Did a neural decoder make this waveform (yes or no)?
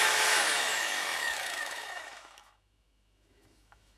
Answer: yes